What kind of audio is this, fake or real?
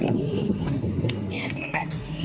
fake